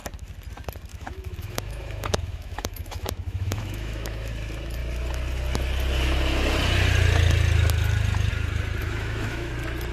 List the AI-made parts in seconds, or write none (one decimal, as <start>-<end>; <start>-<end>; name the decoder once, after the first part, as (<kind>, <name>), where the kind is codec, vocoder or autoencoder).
0.9-4.3 (autoencoder, DAC-VAE); 8.8-9.5